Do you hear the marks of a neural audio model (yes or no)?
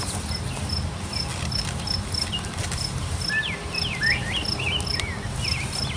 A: no